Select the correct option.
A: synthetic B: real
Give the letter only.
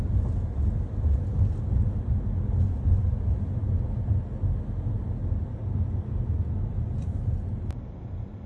B